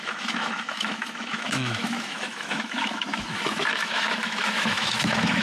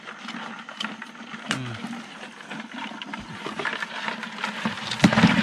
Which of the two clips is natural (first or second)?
second